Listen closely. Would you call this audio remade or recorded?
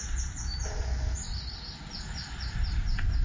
recorded